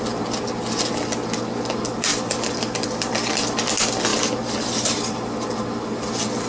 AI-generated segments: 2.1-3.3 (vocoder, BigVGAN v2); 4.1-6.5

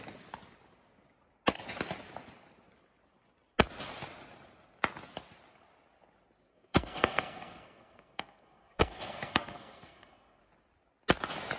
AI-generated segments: 6.5-10.4 (codec, SNAC)

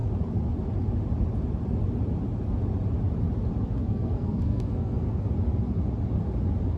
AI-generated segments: 3.8-5.2 (codec, SNAC)

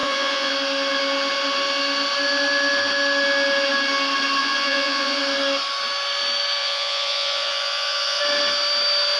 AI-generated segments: 0.0-0.5 (vocoder, Vocos); 4.4-5.2; 6.6-8.2